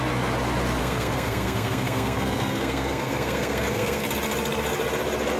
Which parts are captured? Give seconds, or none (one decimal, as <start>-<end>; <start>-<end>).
0.0-0.8; 4.0-5.4

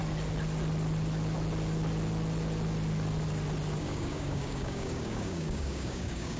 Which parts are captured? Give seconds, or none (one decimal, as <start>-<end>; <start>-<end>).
0.0-3.8

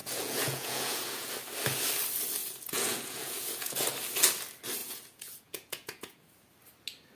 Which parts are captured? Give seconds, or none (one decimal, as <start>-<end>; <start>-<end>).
1.3-2.4; 3.9-4.8; 6.5-7.2

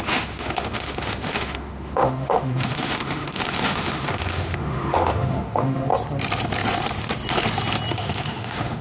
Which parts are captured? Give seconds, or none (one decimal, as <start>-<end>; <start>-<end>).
5.9-7.9